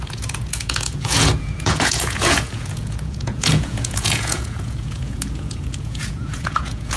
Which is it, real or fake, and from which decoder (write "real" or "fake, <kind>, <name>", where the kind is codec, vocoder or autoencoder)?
fake, vocoder, Vocos